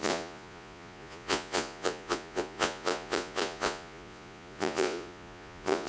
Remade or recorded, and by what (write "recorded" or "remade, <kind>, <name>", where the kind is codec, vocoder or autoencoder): remade, vocoder, Vocos